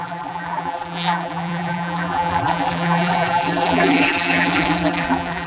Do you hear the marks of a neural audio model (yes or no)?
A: yes